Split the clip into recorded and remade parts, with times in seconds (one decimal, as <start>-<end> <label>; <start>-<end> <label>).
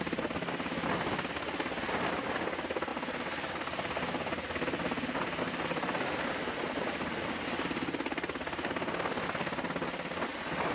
0.0-10.7 recorded